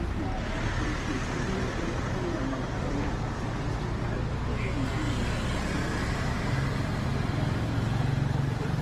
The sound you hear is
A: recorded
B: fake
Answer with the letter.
A